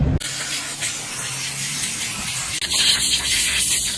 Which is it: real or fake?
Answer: real